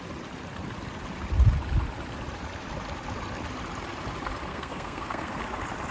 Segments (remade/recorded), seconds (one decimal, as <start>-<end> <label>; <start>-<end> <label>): 0.0-4.5 recorded; 4.5-5.3 remade; 5.3-5.9 recorded